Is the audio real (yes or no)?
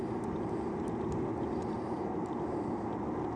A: yes